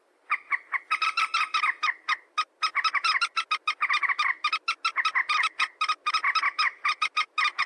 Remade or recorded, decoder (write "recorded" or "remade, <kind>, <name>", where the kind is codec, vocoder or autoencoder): recorded